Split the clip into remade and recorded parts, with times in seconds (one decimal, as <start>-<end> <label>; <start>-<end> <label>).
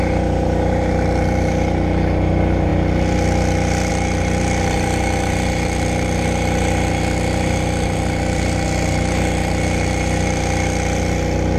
0.0-11.6 recorded